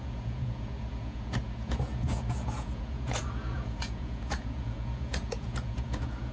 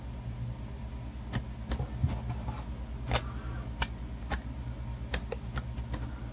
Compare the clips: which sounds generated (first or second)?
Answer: first